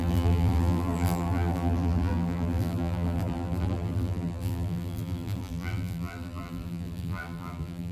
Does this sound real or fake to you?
fake